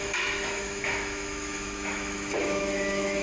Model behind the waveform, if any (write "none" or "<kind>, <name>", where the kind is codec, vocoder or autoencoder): autoencoder, DAC-VAE